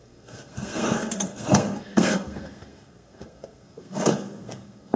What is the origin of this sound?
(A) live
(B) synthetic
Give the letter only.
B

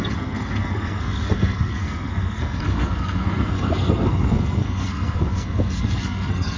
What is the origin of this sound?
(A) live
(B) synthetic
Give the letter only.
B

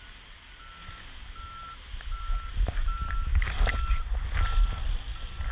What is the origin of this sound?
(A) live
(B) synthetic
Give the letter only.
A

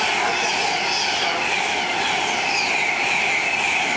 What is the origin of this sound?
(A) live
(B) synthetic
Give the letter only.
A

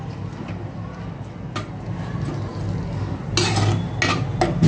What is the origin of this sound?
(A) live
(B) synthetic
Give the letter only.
A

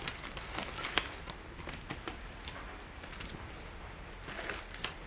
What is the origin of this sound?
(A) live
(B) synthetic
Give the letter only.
A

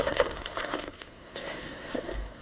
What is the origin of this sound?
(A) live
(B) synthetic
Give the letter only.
B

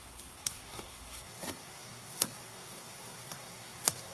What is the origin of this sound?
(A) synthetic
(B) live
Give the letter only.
A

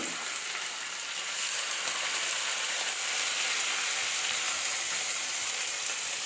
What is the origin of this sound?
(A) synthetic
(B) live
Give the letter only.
B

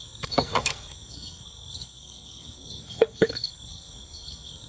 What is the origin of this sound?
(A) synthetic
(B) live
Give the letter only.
A